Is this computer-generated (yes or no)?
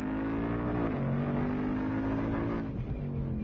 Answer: no